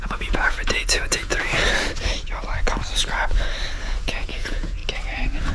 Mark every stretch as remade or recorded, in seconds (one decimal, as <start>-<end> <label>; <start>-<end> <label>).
0.0-1.3 remade; 1.3-3.8 recorded; 3.8-4.8 remade; 4.8-5.5 recorded